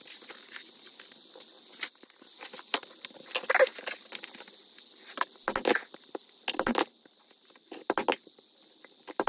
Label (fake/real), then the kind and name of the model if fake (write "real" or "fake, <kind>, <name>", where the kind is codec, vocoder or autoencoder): real